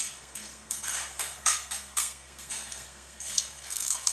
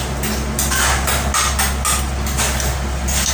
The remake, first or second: first